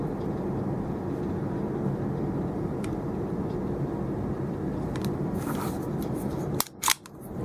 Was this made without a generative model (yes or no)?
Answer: yes